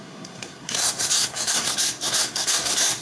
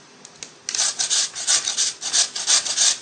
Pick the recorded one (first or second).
second